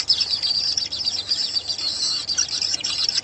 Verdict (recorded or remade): recorded